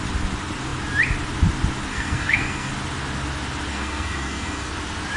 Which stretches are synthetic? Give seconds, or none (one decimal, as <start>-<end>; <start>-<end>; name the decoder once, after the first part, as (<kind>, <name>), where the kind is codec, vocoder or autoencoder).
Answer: 1.9-2.7 (codec, SNAC); 3.7-4.7